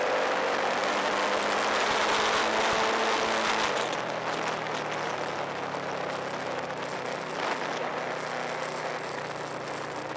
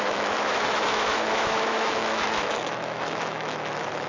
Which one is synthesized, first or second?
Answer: second